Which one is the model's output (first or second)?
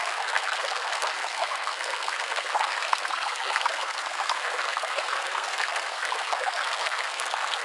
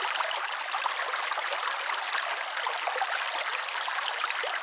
first